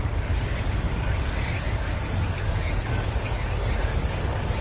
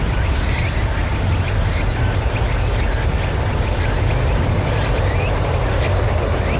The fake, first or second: first